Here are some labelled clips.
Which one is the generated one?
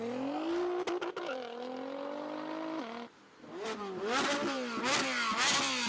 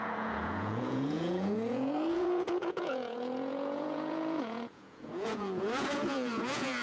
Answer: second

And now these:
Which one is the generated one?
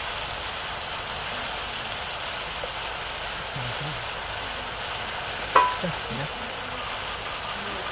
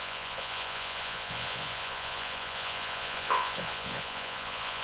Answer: second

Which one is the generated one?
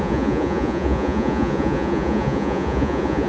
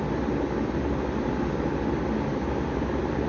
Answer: first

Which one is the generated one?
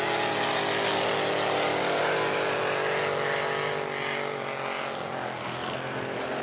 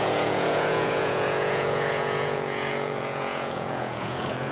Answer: second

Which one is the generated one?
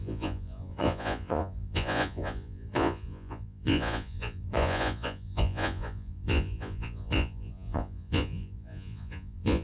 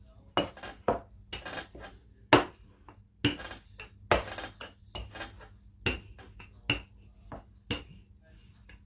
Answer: first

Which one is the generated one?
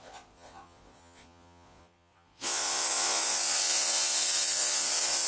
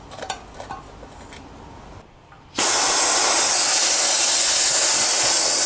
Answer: first